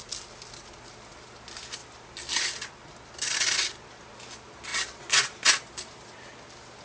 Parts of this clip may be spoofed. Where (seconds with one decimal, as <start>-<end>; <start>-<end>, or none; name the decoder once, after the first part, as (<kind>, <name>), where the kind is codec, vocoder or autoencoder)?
none

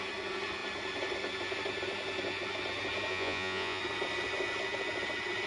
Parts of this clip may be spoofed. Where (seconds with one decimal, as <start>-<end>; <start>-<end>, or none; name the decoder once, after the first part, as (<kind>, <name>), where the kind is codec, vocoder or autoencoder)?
3.1-3.8 (vocoder, Vocos)